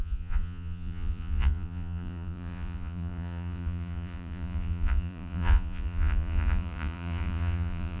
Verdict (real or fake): fake